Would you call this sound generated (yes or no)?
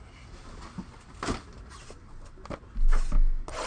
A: no